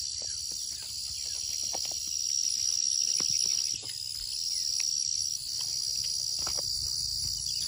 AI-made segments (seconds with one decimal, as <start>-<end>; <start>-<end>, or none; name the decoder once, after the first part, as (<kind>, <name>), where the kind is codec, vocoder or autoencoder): none